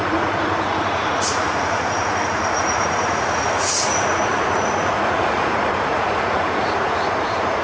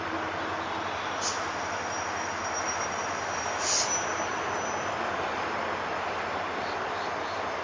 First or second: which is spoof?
first